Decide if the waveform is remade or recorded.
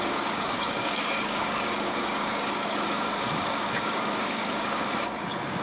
remade